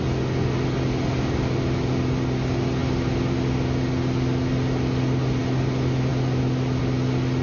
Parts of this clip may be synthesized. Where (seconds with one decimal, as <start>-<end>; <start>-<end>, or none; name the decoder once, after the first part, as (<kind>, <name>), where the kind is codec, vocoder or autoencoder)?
none